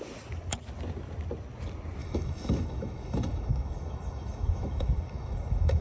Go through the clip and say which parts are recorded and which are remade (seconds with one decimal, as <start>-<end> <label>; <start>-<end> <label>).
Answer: 0.0-2.0 recorded; 2.0-5.8 remade